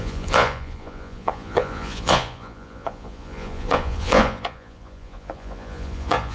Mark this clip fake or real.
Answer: fake